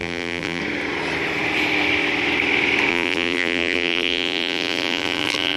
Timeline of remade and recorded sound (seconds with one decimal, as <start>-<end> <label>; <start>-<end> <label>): 0.0-0.6 remade; 0.6-2.9 recorded; 2.9-5.6 remade